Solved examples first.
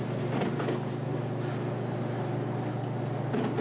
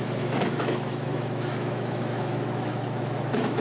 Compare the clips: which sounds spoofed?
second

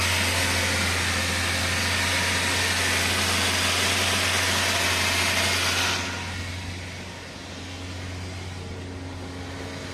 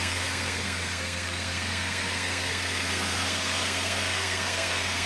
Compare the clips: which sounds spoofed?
second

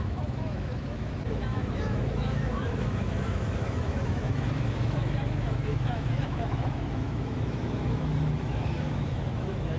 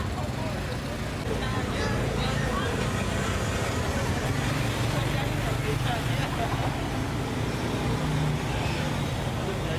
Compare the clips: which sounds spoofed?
first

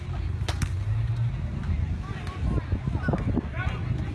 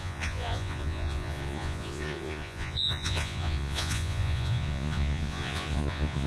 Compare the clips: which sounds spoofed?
second